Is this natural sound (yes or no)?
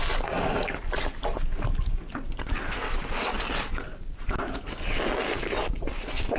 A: yes